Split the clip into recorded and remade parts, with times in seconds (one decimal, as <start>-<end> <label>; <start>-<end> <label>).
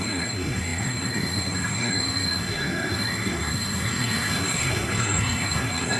0.0-6.0 remade